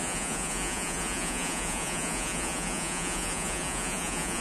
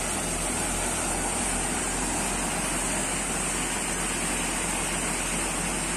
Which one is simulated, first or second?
first